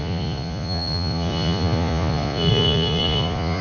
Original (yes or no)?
no